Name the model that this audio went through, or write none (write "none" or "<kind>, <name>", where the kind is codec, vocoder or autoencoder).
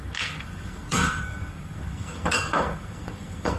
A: codec, SNAC